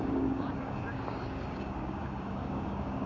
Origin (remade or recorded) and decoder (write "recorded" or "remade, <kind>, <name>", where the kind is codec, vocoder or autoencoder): remade, codec, DAC